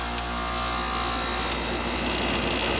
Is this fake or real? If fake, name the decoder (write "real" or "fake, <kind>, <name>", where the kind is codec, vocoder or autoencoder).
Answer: real